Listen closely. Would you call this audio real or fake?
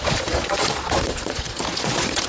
fake